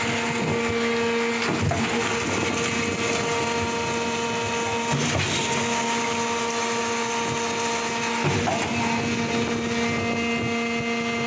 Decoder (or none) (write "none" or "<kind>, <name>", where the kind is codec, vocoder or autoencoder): none